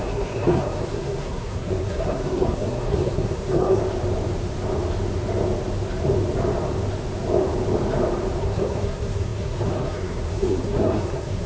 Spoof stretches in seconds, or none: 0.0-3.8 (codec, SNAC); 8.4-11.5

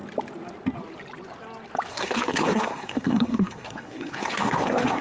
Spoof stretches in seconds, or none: 1.9-5.0 (codec, SNAC)

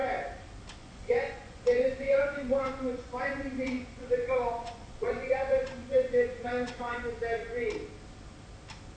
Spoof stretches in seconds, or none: 0.8-7.4 (vocoder, Vocos)

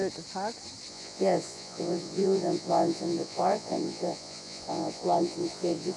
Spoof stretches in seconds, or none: 0.9-6.0 (vocoder, Vocos)

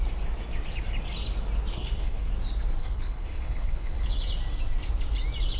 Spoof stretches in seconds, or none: 1.7-2.3 (codec, HILCodec); 2.8-4.1

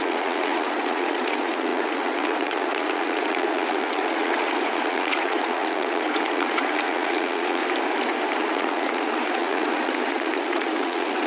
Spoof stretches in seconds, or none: 0.0-7.6 (vocoder, Vocos); 8.4-11.3

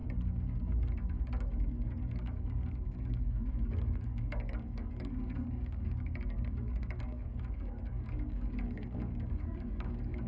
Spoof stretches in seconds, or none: 1.7-10.3 (codec, DAC)